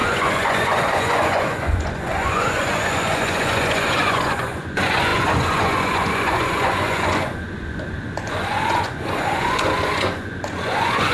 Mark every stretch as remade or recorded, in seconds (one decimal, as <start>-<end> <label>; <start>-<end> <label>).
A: 0.0-11.1 remade